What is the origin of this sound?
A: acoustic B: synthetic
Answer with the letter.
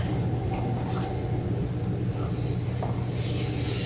A